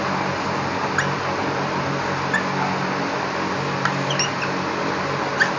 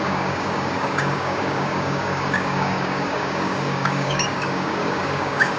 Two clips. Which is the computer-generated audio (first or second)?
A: second